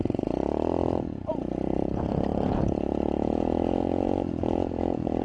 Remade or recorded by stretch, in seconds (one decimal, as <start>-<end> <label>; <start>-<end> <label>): 0.0-5.2 remade